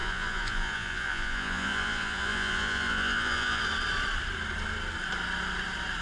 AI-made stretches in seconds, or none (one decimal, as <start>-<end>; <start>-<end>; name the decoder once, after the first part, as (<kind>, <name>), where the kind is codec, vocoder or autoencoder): 0.0-3.6 (vocoder, Vocos)